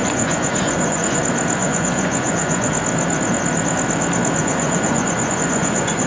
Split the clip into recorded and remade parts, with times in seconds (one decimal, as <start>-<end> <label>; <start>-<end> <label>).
0.0-1.2 remade; 1.2-1.6 recorded; 1.6-2.7 remade; 2.7-4.4 recorded; 4.4-6.1 remade